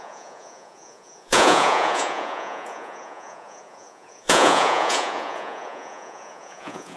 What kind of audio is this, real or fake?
fake